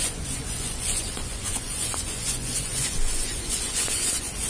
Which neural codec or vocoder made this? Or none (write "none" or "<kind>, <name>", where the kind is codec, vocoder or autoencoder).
vocoder, Vocos